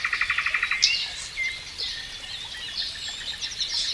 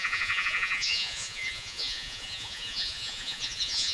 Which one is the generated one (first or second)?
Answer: second